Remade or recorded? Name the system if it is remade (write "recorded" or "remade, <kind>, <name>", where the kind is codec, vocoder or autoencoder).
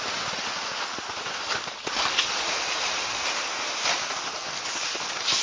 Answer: recorded